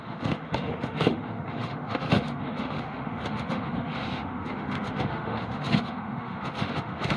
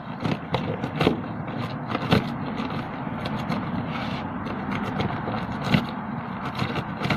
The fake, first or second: first